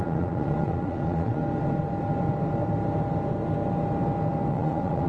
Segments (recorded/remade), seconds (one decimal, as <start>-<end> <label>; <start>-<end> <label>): 0.0-1.4 remade; 1.4-4.5 recorded; 4.5-5.1 remade